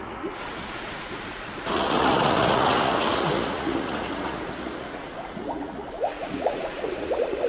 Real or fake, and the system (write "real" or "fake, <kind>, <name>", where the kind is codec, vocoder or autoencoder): fake, vocoder, Vocos